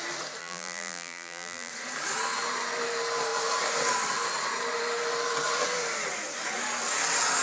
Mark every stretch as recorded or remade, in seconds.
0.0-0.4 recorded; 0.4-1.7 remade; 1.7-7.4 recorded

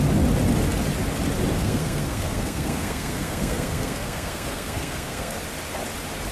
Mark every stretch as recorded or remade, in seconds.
0.0-1.6 recorded; 1.6-5.4 remade; 5.4-6.3 recorded

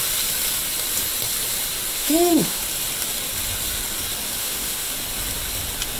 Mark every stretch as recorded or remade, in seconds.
0.0-1.9 recorded; 1.9-2.6 remade; 2.6-4.4 recorded; 4.4-4.9 remade; 4.9-6.0 recorded

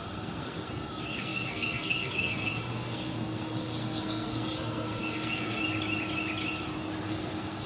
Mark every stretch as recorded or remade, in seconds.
0.0-5.6 remade; 5.6-7.0 recorded; 7.0-7.7 remade

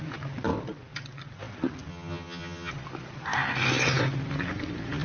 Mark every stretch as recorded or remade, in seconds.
0.0-1.9 recorded; 1.9-2.7 remade; 2.7-5.0 recorded

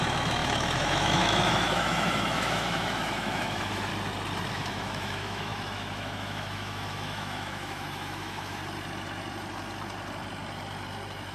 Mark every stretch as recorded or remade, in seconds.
0.0-3.9 remade; 3.9-4.5 recorded; 4.5-8.6 remade; 8.6-11.3 recorded

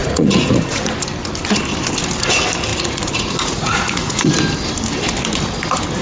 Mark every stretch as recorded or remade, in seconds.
0.0-0.9 remade; 0.9-2.7 recorded; 2.7-4.2 remade; 4.2-6.0 recorded

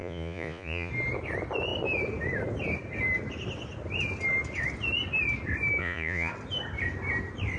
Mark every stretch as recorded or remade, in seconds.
0.0-0.9 remade; 0.9-5.8 recorded; 5.8-6.3 remade; 6.3-7.6 recorded